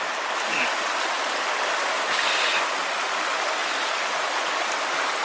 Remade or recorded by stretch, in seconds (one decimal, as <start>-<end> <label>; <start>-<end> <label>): 0.0-5.2 recorded